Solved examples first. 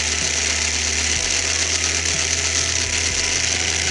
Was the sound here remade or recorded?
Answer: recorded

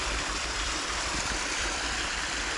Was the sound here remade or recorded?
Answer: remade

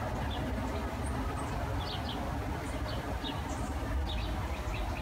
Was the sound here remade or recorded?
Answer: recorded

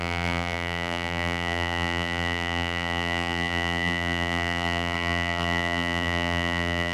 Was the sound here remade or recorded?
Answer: remade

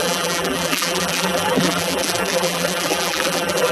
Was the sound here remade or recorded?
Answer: remade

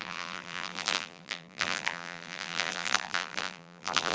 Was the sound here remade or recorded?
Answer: remade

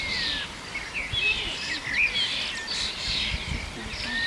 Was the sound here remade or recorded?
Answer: recorded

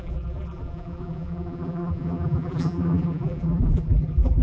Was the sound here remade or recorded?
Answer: remade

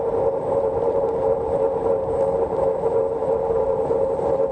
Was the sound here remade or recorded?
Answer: remade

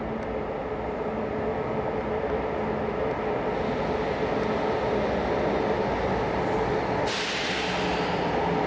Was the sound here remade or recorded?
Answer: recorded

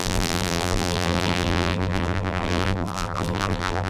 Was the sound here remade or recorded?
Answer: remade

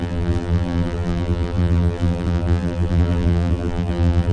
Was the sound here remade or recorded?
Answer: remade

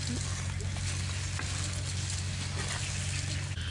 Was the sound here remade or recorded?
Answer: recorded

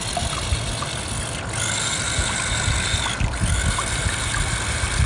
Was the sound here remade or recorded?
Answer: recorded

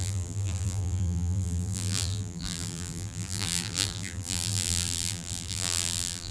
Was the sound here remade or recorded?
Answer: remade